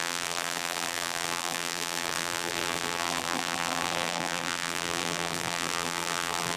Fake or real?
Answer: fake